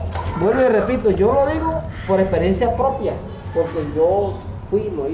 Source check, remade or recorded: recorded